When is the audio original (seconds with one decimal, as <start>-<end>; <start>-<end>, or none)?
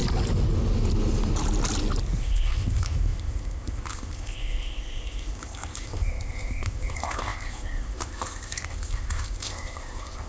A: 0.0-2.2